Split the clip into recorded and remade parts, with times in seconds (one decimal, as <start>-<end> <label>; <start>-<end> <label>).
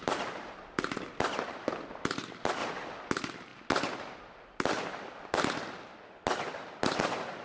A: 0.0-7.4 recorded